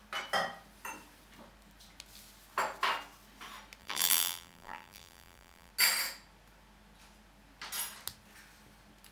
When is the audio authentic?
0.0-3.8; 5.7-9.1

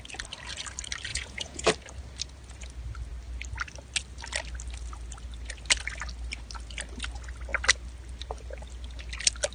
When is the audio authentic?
0.0-1.1; 1.7-9.5

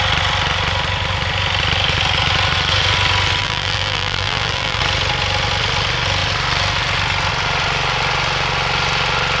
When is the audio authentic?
0.0-3.4; 4.8-9.4

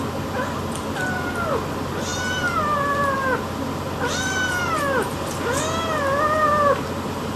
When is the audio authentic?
0.0-7.4